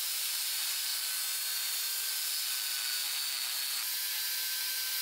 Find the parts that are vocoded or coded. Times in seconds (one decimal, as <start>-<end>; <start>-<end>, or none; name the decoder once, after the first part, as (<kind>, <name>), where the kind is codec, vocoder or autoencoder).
0.0-0.9 (vocoder, BigVGAN v2); 3.9-5.0